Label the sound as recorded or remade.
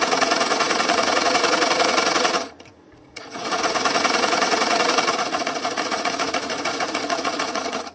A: remade